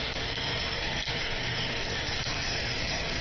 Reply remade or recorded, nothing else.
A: remade